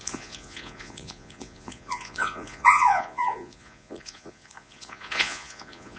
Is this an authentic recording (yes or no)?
no